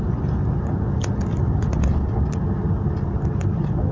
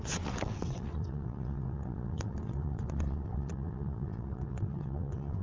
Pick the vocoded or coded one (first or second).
second